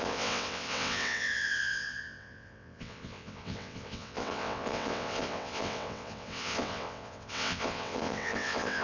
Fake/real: fake